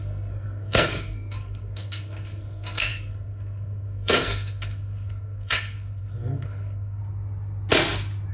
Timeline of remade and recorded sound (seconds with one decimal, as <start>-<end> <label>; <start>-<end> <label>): 0.0-7.0 remade; 7.0-8.3 recorded